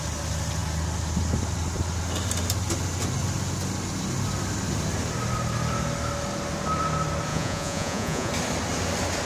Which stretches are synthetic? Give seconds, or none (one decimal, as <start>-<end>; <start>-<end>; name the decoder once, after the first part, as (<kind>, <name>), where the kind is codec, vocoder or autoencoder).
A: 7.3-8.3 (vocoder, Vocos)